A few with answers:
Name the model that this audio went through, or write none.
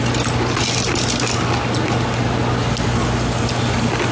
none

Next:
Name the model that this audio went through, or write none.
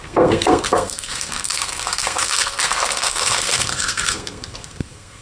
codec, SNAC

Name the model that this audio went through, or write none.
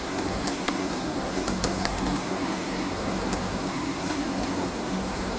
codec, SNAC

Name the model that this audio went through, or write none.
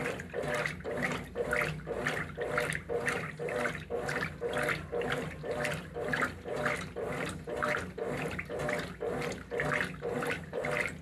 none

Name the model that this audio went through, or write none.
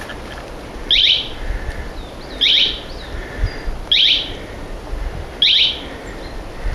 none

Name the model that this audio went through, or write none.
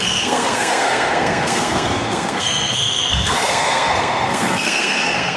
codec, SNAC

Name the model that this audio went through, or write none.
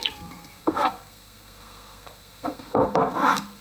codec, SNAC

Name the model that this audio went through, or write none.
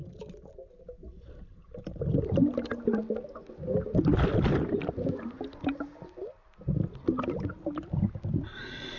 none